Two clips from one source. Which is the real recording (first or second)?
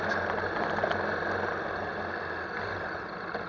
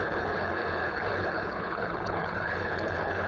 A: first